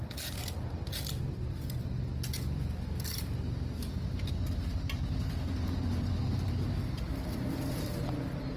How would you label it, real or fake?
real